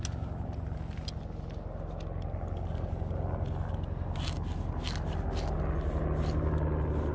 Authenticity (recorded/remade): recorded